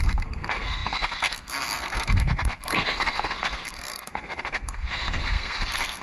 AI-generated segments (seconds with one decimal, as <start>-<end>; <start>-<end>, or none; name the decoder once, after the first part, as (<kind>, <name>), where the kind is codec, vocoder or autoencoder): 0.0-6.0 (codec, SNAC)